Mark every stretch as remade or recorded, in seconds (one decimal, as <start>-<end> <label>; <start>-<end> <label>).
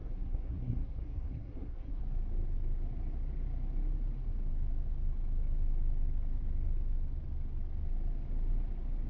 0.0-2.0 remade; 2.0-9.1 recorded